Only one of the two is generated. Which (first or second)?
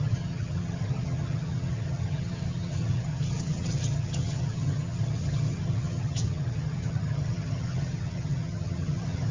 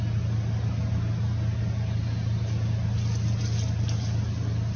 first